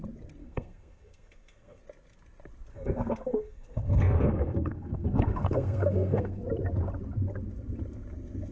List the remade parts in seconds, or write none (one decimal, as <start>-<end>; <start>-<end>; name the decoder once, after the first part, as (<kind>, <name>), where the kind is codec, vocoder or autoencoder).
0.4-1.8 (codec, SNAC); 2.7-6.4